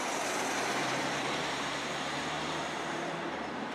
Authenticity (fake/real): fake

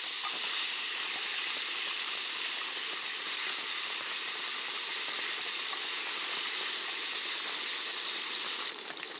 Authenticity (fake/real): fake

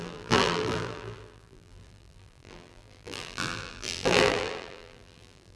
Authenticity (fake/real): fake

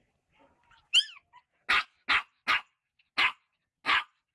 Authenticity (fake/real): real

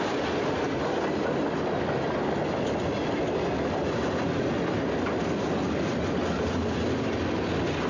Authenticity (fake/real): real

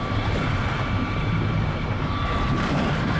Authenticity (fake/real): fake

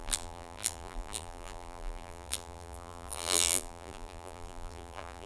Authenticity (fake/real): fake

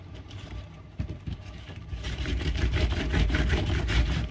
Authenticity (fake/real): fake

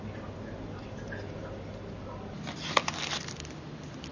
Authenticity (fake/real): fake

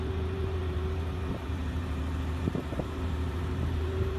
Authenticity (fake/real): fake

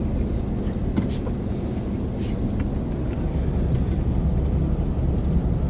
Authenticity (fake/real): real